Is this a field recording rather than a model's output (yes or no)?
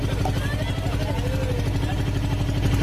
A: yes